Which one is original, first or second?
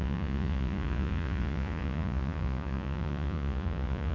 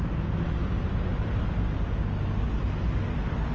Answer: second